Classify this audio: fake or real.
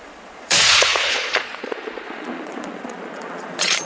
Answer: fake